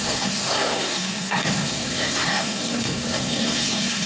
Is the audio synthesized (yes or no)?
yes